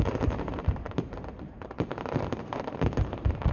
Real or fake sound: fake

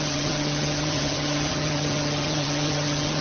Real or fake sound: fake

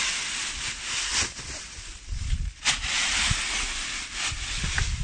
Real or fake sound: real